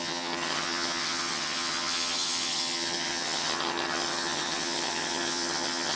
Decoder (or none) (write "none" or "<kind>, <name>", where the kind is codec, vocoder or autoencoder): vocoder, HiFi-GAN